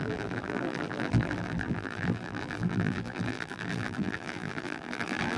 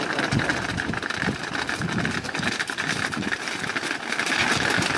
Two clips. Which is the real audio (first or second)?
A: second